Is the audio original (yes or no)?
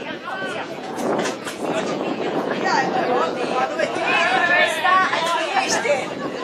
no